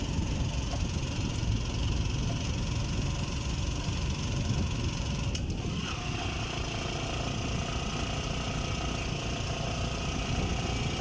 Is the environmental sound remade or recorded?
recorded